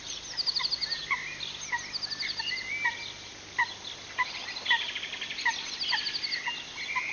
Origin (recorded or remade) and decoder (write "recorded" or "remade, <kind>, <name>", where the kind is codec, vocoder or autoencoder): recorded